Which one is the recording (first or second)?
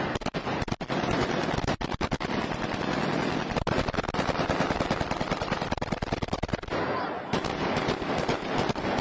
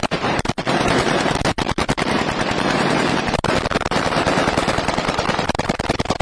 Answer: first